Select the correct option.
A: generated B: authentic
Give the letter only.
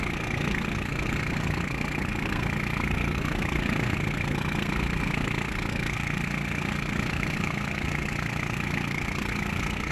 A